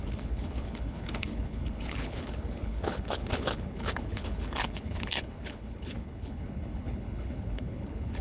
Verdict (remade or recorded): remade